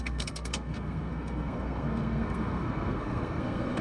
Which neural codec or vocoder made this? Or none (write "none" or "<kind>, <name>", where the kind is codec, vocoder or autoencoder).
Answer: codec, SNAC